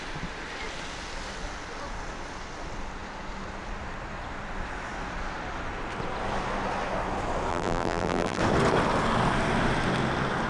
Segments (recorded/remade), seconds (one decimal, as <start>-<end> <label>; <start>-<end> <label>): 0.0-7.5 recorded; 7.5-8.4 remade; 8.4-10.5 recorded